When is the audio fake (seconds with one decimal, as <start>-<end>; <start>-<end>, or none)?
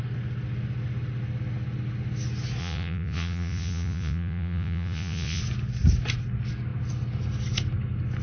2.6-5.4